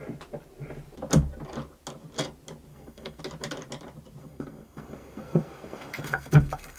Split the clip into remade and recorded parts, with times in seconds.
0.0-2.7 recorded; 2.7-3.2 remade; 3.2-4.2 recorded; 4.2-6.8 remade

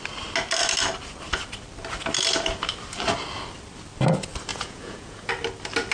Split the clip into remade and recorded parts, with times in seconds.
0.0-4.5 recorded; 4.5-5.3 remade; 5.3-5.9 recorded

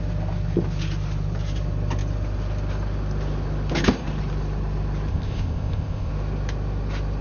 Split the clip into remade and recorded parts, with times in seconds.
0.0-5.1 recorded; 5.1-6.1 remade; 6.1-7.2 recorded